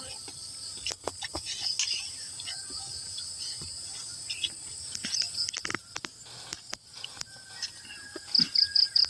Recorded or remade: recorded